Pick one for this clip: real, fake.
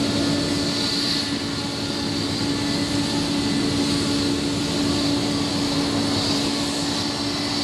real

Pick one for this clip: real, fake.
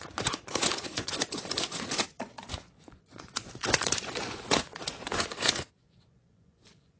fake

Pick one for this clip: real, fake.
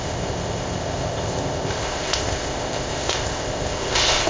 fake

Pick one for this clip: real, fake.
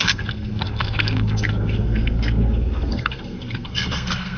fake